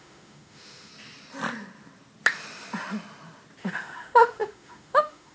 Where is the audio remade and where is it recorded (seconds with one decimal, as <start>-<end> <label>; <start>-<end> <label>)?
0.0-0.9 remade; 0.9-3.6 recorded; 3.6-5.3 remade

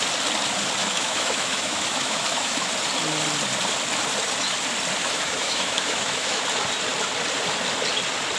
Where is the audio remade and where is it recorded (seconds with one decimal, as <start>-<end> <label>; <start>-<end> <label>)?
0.0-0.8 recorded; 0.8-2.7 remade; 2.7-5.0 recorded; 5.0-6.4 remade; 6.4-8.4 recorded

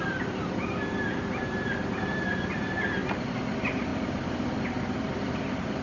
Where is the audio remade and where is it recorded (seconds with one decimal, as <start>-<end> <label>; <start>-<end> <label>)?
0.0-0.7 remade; 0.7-2.0 recorded; 2.0-3.0 remade; 3.0-3.5 recorded; 3.5-3.9 remade; 3.9-5.0 recorded; 5.0-5.8 remade